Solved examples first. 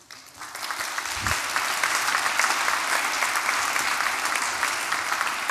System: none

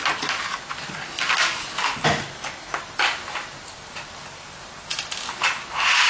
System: none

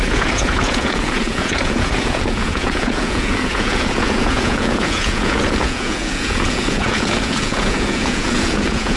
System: vocoder, Vocos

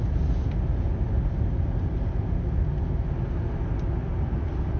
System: none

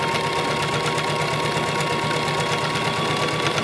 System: none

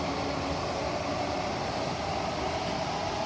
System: none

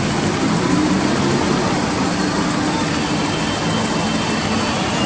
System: none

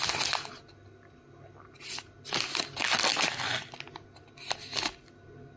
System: none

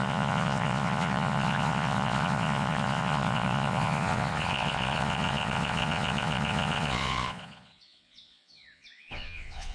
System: vocoder, Vocos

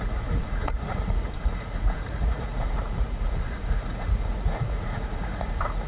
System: vocoder, Vocos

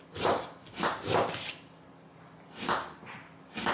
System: none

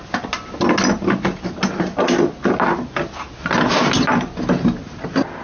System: none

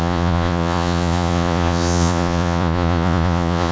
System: vocoder, Vocos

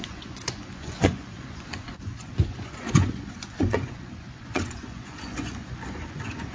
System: vocoder, Vocos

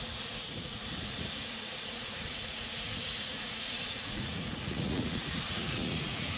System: vocoder, Vocos